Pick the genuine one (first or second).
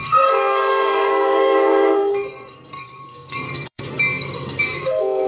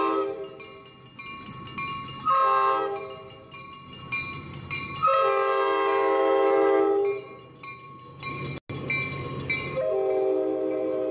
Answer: second